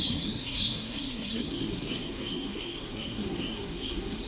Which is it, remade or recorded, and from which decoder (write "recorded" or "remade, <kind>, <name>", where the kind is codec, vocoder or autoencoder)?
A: remade, codec, SNAC